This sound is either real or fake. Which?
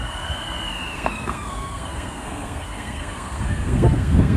fake